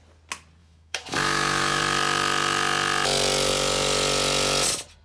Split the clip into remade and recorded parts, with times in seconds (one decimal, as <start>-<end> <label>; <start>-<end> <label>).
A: 0.0-0.6 recorded; 0.6-1.8 remade; 1.8-5.0 recorded